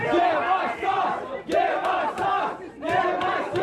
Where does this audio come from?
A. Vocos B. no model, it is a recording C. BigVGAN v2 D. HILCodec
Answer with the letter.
C